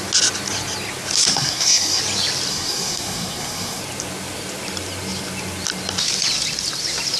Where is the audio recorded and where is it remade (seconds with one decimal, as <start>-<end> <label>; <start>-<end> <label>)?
0.0-1.3 recorded; 1.3-2.0 remade; 2.0-2.5 recorded; 2.5-3.8 remade; 3.8-7.2 recorded